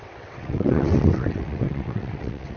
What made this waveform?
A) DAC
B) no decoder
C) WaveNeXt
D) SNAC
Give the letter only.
C